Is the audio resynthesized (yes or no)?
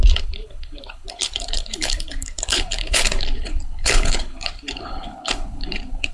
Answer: yes